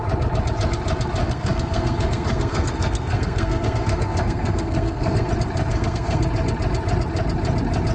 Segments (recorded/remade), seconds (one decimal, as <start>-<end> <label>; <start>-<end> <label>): 0.0-1.2 recorded; 1.2-5.3 remade; 5.3-5.7 recorded; 5.7-6.2 remade; 6.2-7.9 recorded